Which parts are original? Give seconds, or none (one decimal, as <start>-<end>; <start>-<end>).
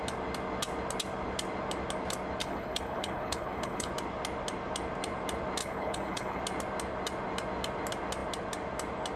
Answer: 0.0-2.4; 3.9-5.6; 6.4-9.2